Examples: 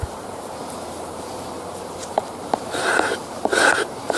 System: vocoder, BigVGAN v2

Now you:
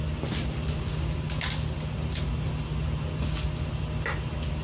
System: none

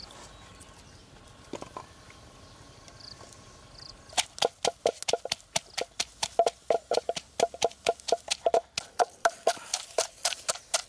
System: none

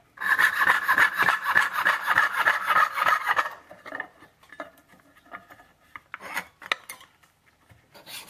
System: none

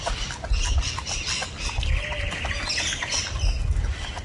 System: none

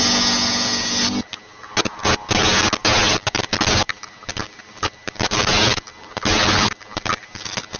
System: none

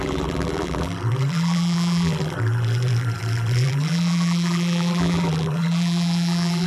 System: vocoder, BigVGAN v2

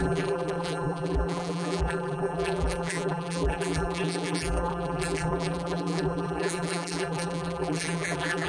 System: vocoder, BigVGAN v2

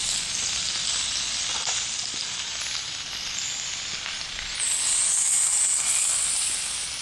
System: none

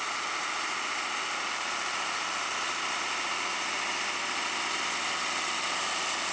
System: none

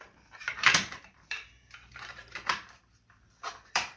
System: vocoder, BigVGAN v2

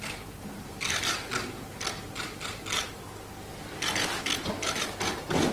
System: none